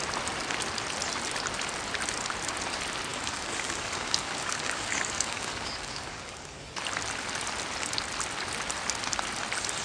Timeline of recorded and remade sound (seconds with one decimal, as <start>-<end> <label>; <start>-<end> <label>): 0.0-3.1 recorded; 3.1-6.7 remade; 6.7-9.8 recorded